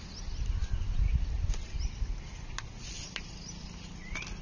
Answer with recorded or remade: recorded